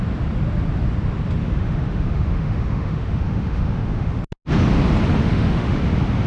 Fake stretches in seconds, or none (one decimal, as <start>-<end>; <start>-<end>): 1.4-4.2; 5.2-5.8